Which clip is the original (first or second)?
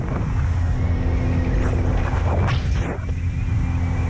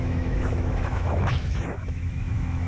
first